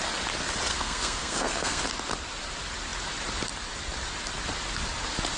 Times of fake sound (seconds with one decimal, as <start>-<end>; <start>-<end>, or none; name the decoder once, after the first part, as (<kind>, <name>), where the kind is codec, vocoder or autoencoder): 0.7-1.8 (codec, SNAC)